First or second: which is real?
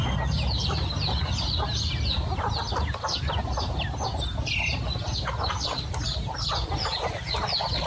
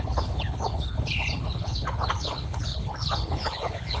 first